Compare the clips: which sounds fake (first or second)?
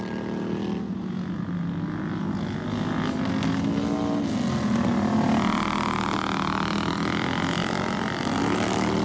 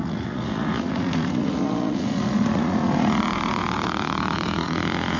second